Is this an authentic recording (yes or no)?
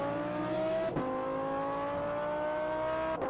yes